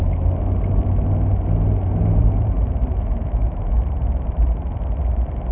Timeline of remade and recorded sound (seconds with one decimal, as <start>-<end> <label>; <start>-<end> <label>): 0.0-2.2 recorded; 2.2-5.0 remade; 5.0-5.5 recorded